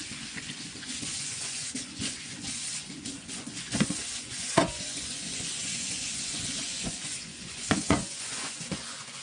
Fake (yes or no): yes